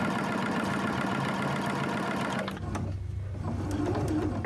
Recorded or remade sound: recorded